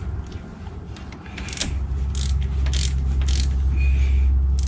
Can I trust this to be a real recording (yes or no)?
yes